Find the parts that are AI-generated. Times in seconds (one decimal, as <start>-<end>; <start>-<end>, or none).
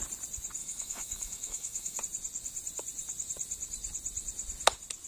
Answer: 0.6-2.0